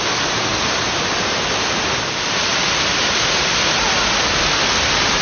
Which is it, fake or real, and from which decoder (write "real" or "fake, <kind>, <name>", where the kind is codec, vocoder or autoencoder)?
real